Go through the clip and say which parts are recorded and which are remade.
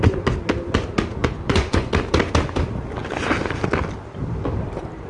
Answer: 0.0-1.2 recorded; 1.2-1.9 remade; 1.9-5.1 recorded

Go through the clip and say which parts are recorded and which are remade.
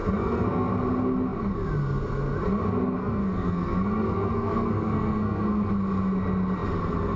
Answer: 0.0-0.7 remade; 0.7-3.0 recorded; 3.0-5.7 remade; 5.7-7.2 recorded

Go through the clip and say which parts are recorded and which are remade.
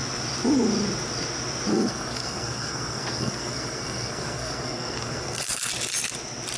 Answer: 0.0-1.7 recorded; 1.7-5.7 remade; 5.7-6.6 recorded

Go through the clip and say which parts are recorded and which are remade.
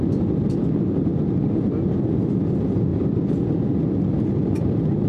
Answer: 0.0-5.1 recorded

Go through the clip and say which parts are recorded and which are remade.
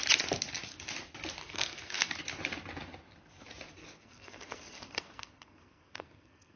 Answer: 0.0-1.4 recorded; 1.4-2.1 remade; 2.1-3.8 recorded; 3.8-6.6 remade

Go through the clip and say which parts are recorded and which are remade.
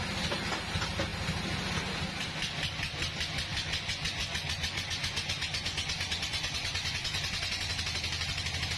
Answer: 0.0-3.5 recorded; 3.5-7.8 remade; 7.8-8.8 recorded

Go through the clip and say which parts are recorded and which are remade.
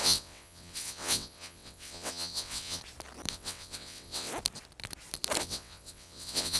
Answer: 0.0-2.8 remade; 2.8-3.3 recorded; 3.3-4.3 remade; 4.3-5.4 recorded; 5.4-6.6 remade